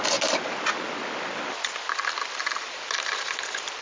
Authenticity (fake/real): real